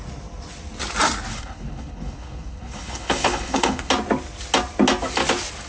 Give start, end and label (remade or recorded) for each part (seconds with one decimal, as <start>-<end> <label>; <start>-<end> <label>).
0.0-1.3 recorded; 1.3-3.9 remade; 3.9-5.7 recorded